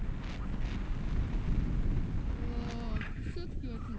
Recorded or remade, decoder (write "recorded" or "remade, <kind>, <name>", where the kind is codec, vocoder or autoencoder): recorded